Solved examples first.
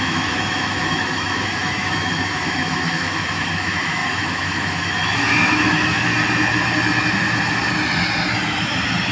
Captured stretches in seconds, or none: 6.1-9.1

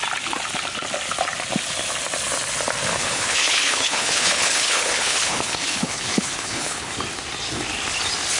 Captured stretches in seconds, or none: 0.0-2.9; 6.9-8.4

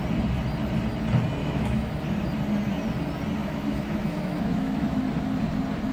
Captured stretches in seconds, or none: 0.0-1.4; 1.9-3.4; 5.0-5.9

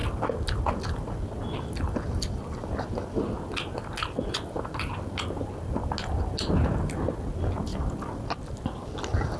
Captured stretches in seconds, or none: 0.0-9.4